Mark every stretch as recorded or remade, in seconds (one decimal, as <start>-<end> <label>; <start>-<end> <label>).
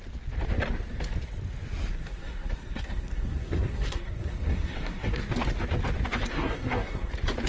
0.0-1.9 recorded; 1.9-5.2 remade; 5.2-6.3 recorded; 6.3-7.1 remade; 7.1-7.5 recorded